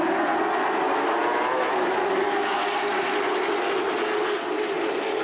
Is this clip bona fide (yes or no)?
yes